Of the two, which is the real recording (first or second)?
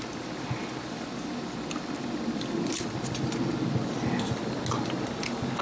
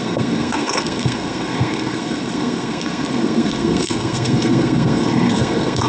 first